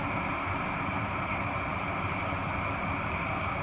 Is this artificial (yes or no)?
no